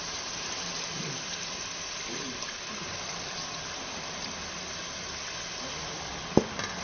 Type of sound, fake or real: fake